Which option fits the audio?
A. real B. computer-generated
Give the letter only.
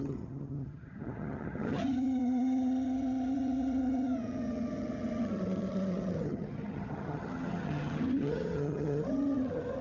B